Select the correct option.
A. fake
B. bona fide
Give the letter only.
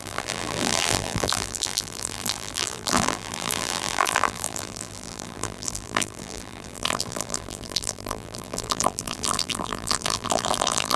A